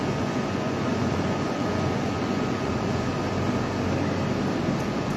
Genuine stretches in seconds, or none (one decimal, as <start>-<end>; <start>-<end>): 3.1-4.8